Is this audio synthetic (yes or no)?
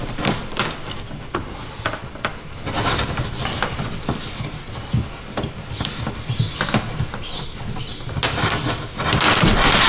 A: no